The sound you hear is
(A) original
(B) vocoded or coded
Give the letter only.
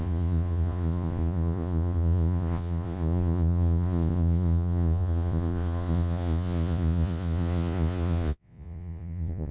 B